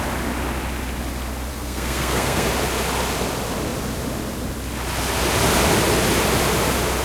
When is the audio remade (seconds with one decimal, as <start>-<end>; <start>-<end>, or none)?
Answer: 1.5-2.5